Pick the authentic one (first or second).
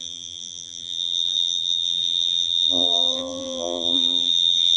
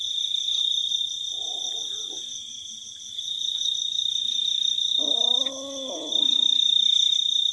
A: second